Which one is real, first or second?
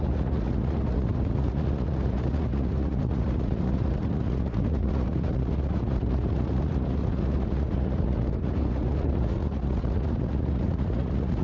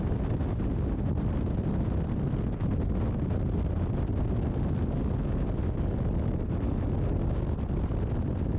second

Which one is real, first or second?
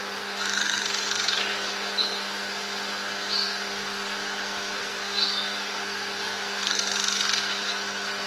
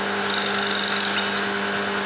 second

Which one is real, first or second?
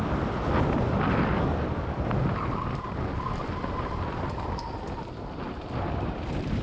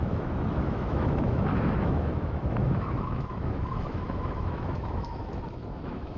first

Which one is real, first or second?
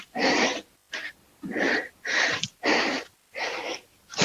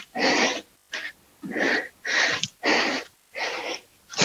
second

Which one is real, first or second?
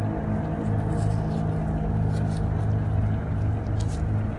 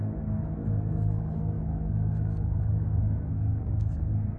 first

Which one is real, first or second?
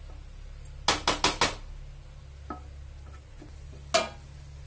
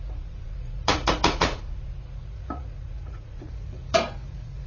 first